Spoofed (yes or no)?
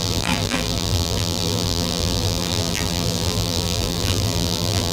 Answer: yes